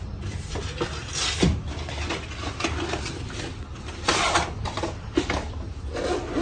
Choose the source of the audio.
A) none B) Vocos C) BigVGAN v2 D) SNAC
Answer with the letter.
A